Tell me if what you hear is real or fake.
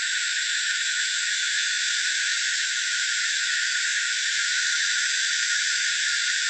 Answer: fake